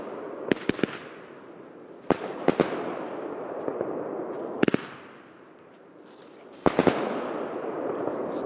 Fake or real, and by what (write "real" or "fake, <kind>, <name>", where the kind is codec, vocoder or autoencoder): fake, vocoder, BigVGAN v2